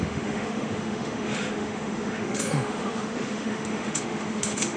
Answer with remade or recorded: remade